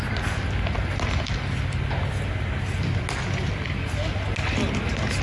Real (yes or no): yes